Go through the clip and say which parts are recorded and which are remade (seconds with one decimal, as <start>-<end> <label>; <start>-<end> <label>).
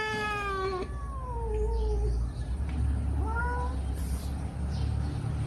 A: 0.0-5.5 recorded